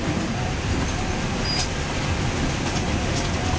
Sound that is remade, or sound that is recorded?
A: recorded